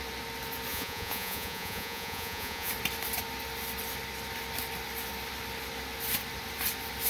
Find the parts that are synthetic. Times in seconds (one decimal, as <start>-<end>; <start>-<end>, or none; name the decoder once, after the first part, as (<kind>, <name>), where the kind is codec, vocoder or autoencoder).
0.7-2.7 (vocoder, Vocos)

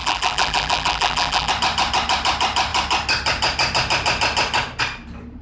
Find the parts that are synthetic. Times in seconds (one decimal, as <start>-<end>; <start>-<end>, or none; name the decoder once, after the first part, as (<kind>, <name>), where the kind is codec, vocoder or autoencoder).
0.0-1.5 (vocoder, BigVGAN v2)

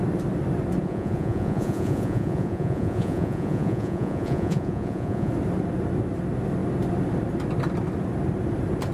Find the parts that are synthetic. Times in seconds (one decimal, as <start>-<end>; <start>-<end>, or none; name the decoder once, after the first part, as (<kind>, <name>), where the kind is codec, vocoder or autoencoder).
0.8-5.3 (vocoder, Vocos)

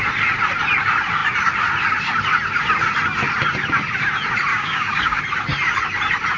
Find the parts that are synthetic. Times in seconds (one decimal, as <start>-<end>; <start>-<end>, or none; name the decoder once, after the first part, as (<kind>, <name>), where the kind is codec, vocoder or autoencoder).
4.5-5.2 (codec, DAC)

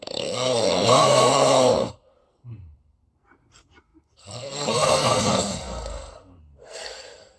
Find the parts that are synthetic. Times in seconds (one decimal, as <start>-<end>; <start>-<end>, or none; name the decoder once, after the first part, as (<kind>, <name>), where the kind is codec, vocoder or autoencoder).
0.0-7.4 (codec, SNAC)

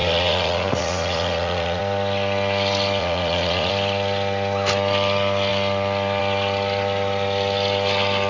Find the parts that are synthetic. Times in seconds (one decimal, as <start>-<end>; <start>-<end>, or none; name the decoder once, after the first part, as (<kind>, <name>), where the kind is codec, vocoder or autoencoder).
0.0-1.8 (vocoder, Vocos); 3.0-3.7

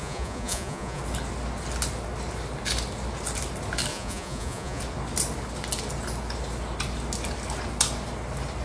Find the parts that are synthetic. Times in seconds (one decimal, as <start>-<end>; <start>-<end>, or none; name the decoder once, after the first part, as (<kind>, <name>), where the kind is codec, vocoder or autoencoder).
0.0-1.0 (vocoder, Vocos); 3.9-4.8

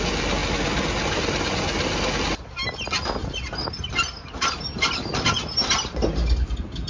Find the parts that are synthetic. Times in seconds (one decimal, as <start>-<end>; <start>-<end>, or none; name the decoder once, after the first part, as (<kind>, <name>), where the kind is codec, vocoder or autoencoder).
none